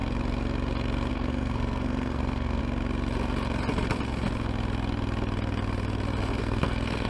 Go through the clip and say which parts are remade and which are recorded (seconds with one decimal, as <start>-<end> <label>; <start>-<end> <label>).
0.0-1.1 recorded; 1.1-2.6 remade; 2.6-6.4 recorded; 6.4-7.1 remade